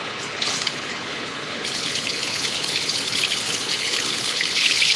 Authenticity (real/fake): fake